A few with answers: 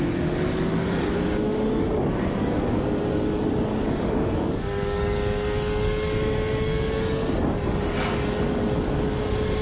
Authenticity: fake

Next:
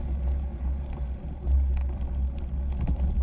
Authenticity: real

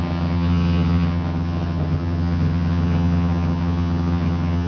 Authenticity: fake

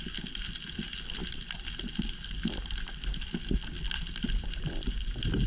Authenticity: real